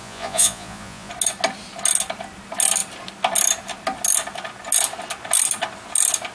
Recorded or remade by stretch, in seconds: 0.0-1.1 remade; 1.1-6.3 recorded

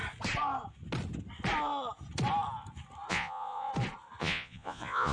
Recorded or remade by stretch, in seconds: 0.0-3.1 recorded; 3.1-3.7 remade; 3.7-4.2 recorded; 4.2-5.1 remade

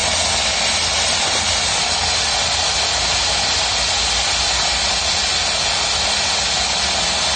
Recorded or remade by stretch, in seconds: 0.0-7.4 recorded

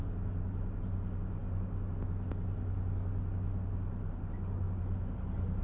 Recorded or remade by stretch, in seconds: 0.0-5.6 recorded